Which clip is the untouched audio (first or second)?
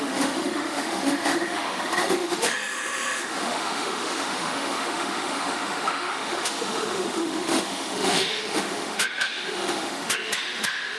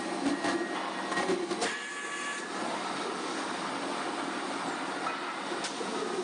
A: second